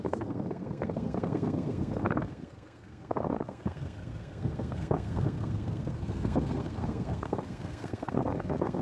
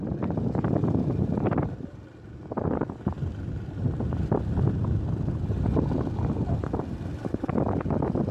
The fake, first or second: first